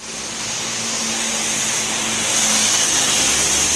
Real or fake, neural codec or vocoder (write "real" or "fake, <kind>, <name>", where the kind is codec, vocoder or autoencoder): real